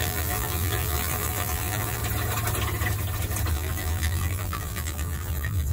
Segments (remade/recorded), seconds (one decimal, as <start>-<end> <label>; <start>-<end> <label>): 0.0-2.0 remade; 2.0-3.5 recorded; 3.5-5.7 remade